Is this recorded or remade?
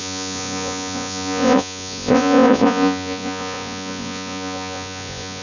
remade